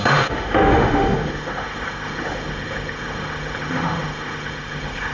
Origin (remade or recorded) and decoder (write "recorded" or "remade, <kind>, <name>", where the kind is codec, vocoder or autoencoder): remade, autoencoder, DAC-VAE